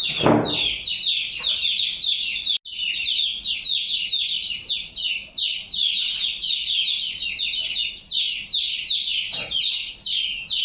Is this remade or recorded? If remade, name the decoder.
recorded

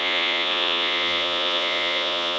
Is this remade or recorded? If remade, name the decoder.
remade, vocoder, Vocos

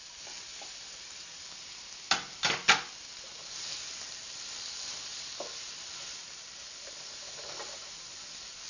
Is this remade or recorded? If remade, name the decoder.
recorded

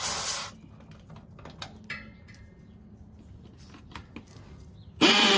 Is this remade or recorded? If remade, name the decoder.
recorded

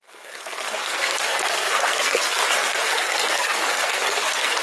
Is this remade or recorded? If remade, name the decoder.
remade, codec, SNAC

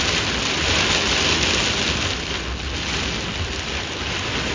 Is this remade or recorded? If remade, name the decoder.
recorded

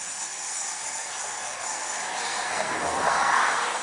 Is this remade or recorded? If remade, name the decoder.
remade, codec, SNAC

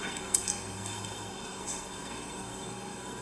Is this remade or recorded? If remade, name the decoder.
remade, codec, SNAC